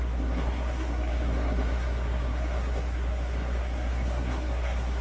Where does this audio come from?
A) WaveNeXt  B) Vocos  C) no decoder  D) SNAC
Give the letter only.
D